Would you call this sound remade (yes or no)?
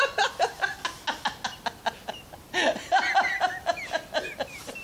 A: no